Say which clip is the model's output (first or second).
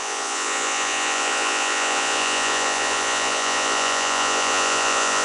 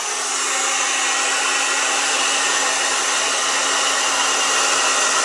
first